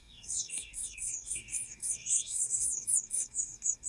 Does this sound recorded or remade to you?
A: remade